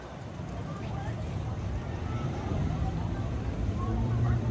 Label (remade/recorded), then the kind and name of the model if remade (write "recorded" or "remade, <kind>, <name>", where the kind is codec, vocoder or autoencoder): remade, vocoder, BigVGAN v2